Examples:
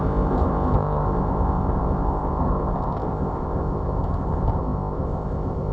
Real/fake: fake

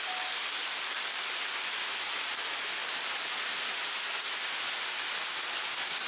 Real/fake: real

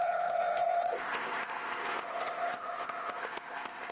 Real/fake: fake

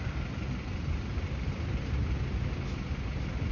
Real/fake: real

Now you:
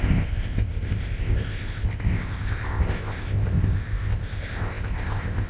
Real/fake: fake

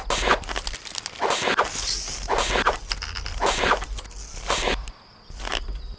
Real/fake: real